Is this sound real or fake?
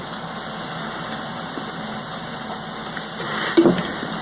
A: real